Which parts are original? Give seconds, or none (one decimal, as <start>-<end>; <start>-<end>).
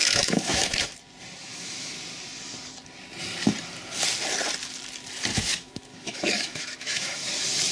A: 0.7-1.4; 1.9-5.3; 7.3-7.7